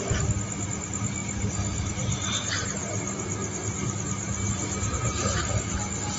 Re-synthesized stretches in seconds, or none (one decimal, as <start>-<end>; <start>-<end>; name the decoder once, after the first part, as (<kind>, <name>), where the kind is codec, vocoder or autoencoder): none

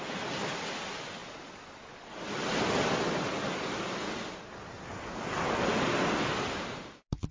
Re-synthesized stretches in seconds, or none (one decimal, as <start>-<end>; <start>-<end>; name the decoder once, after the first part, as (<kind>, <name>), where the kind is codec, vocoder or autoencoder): none

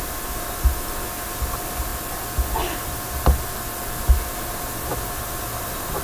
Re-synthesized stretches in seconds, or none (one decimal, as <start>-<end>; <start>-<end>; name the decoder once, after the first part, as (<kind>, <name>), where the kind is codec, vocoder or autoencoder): none